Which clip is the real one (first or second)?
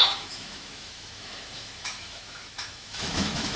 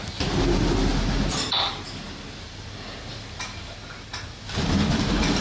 second